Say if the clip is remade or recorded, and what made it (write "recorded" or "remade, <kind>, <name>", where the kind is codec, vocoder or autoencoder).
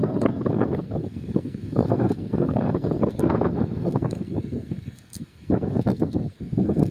remade, codec, SNAC